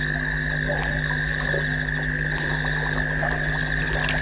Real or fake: real